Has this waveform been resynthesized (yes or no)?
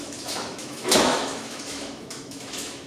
yes